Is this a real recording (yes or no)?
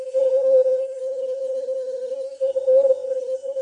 no